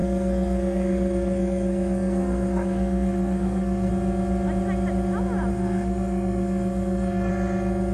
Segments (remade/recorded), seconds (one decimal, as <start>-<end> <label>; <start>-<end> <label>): 0.0-3.9 remade; 3.9-5.5 recorded; 5.5-7.3 remade; 7.3-7.9 recorded

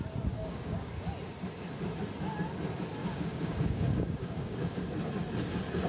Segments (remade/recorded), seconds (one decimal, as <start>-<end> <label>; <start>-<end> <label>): 0.0-0.4 recorded; 0.4-0.9 remade; 0.9-3.0 recorded; 3.0-4.8 remade; 4.8-5.9 recorded

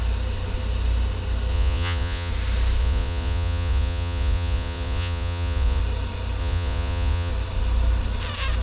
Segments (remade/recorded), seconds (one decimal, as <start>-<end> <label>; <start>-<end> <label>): 0.0-1.5 recorded; 1.5-2.3 remade; 2.3-2.8 recorded; 2.8-5.8 remade; 5.8-6.4 recorded; 6.4-7.3 remade; 7.3-8.6 recorded

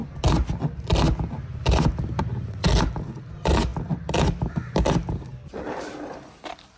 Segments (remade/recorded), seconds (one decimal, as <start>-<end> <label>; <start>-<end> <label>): 0.0-6.8 recorded

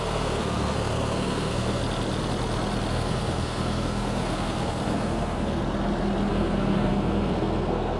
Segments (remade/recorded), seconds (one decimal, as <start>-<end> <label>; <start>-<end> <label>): 0.0-1.8 remade; 1.8-2.9 recorded; 2.9-5.6 remade; 5.6-6.3 recorded; 6.3-8.0 remade